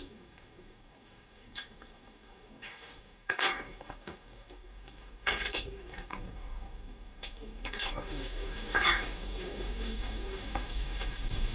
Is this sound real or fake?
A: fake